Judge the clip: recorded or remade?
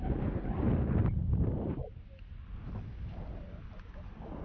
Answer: recorded